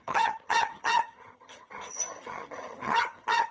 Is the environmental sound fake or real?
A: fake